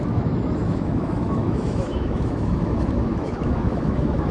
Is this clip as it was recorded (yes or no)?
no